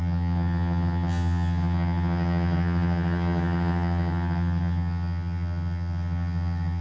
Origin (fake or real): fake